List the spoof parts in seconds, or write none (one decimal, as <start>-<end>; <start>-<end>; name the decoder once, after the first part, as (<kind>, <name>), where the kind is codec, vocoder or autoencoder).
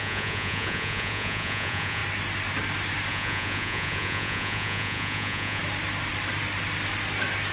0.0-2.0 (vocoder, Vocos); 3.1-5.6